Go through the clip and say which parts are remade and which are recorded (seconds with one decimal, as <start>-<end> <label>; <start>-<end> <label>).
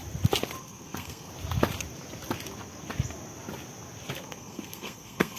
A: 0.0-0.6 recorded; 0.6-1.3 remade; 1.3-4.2 recorded; 4.2-5.4 remade